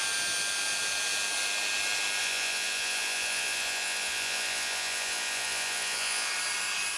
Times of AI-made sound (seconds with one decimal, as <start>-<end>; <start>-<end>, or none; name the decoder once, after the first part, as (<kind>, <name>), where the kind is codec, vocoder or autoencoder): 2.2-6.3 (vocoder, Vocos)